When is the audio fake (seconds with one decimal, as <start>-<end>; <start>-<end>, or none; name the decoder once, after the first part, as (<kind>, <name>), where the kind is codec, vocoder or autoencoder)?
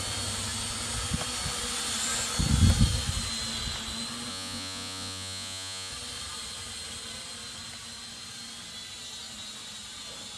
4.3-5.9 (vocoder, Vocos)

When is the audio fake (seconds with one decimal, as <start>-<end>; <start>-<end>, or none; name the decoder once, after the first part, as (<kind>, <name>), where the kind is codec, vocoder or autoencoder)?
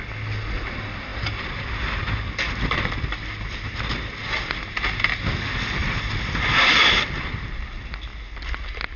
none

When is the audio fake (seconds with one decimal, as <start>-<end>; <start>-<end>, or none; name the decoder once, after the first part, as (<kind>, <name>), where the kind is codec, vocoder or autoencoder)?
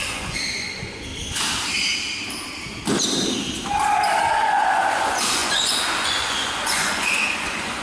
0.0-1.1 (vocoder, Vocos); 4.3-7.8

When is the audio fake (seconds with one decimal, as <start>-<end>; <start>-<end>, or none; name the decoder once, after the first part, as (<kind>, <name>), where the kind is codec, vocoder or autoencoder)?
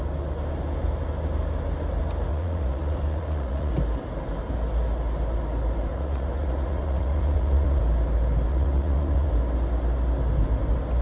2.3-3.7 (vocoder, Vocos); 5.9-7.8; 8.5-9.3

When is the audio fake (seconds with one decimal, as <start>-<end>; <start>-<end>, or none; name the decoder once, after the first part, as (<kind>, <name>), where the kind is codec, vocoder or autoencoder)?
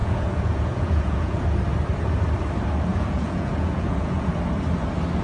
0.0-1.4 (vocoder, Vocos); 2.9-4.3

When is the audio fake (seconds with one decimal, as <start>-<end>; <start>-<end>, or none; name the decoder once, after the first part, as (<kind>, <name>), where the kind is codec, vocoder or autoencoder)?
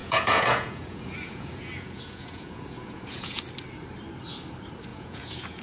0.0-3.4 (vocoder, Vocos); 4.9-5.6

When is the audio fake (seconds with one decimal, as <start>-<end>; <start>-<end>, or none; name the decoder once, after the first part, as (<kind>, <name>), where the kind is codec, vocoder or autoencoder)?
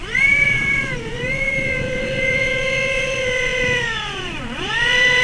0.0-5.2 (vocoder, Vocos)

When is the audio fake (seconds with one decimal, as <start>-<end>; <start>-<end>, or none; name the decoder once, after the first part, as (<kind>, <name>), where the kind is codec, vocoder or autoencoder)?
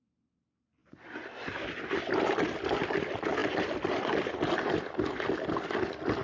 none